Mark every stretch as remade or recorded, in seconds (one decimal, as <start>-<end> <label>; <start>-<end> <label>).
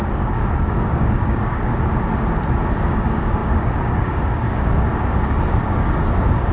0.0-1.7 remade; 1.7-2.7 recorded; 2.7-6.5 remade